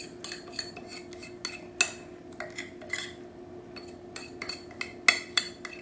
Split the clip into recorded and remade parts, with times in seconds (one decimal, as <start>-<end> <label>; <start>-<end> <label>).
0.0-5.8 recorded